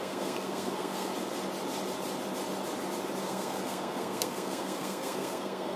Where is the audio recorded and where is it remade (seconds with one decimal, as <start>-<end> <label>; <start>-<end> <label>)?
0.0-1.1 remade; 1.1-3.2 recorded; 3.2-5.8 remade